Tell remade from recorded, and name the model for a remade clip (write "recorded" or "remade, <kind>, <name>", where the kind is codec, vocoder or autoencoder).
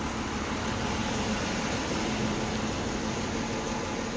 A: recorded